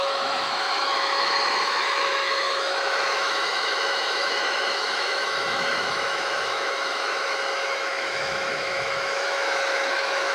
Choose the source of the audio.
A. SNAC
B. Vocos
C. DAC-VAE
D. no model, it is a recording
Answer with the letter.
C